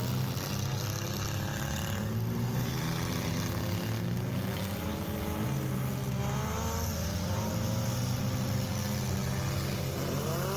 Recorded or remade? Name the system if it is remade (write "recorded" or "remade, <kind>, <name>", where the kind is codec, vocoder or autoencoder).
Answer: recorded